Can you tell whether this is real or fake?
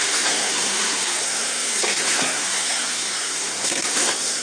fake